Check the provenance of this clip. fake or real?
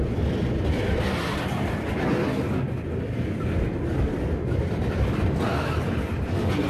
real